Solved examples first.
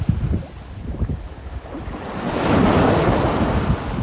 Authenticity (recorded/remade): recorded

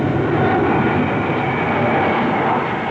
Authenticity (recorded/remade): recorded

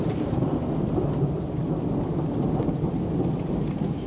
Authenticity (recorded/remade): recorded